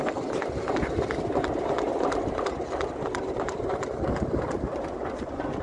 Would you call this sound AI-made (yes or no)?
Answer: no